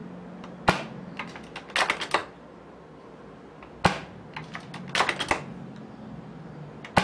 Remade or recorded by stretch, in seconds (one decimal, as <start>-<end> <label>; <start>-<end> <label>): 0.0-7.0 recorded